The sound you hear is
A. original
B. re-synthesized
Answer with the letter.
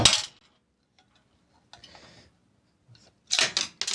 A